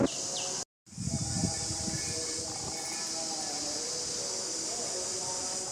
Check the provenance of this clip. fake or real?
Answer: real